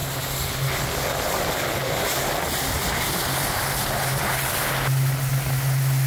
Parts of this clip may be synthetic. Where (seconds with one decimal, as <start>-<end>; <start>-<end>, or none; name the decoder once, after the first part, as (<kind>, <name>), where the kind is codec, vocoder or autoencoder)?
none